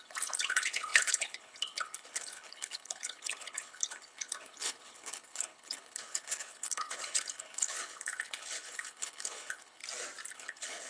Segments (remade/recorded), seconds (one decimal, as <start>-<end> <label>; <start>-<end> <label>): 0.0-9.8 remade; 9.8-10.3 recorded; 10.3-10.9 remade